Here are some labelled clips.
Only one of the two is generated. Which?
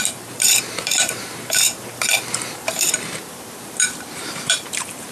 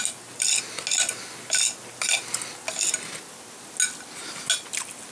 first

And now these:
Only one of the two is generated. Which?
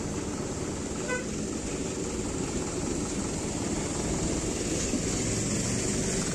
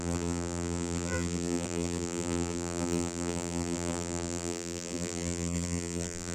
second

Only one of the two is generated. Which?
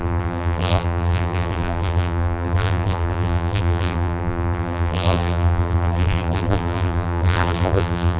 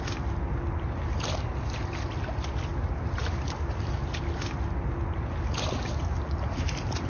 first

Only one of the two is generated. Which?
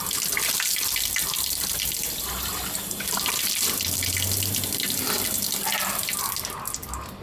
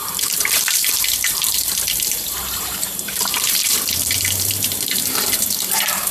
second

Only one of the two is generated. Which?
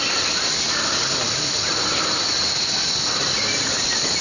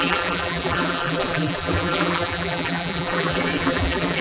second